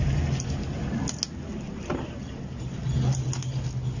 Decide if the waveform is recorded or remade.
recorded